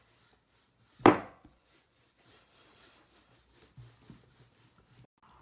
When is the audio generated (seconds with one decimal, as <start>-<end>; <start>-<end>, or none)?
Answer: 1.1-2.3